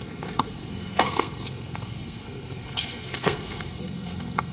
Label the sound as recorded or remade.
remade